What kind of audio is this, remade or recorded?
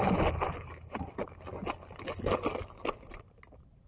recorded